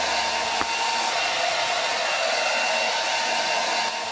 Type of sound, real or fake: real